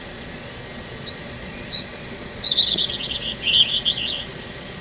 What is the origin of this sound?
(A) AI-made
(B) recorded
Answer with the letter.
A